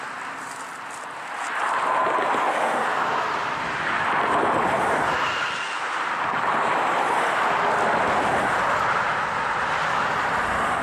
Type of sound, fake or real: real